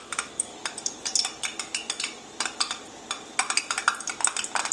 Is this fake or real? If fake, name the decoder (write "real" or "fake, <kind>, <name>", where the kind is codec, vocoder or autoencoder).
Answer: real